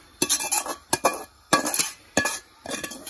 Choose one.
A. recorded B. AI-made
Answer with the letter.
A